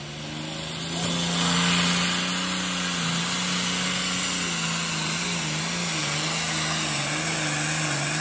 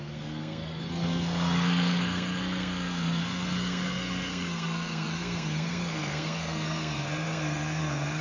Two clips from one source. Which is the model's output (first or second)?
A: second